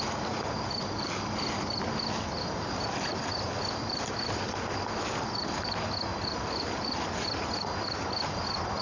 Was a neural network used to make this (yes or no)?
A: no